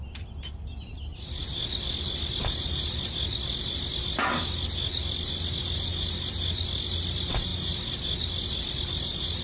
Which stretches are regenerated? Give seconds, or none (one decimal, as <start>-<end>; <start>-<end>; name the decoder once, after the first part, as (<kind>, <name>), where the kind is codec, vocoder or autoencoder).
none